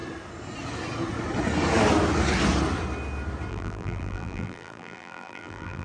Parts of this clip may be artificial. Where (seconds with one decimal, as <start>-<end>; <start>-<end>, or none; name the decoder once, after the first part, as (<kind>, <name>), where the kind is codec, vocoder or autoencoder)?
3.5-5.8 (vocoder, BigVGAN v2)